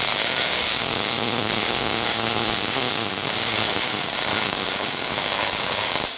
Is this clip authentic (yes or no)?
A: no